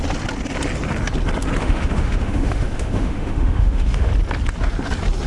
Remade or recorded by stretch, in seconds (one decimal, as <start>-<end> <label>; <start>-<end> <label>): 0.0-1.6 recorded; 1.6-4.1 remade; 4.1-5.3 recorded